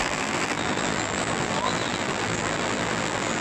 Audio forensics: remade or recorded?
remade